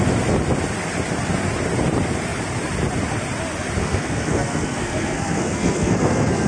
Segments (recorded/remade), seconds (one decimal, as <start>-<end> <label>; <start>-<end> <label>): 0.0-3.8 recorded; 3.8-6.5 remade

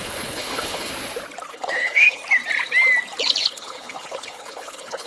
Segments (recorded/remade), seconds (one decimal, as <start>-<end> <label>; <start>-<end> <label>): 0.0-0.9 remade; 0.9-1.5 recorded; 1.5-2.2 remade; 2.2-3.4 recorded; 3.4-5.1 remade